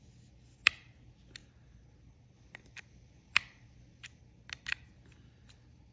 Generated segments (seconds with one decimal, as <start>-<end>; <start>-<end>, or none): none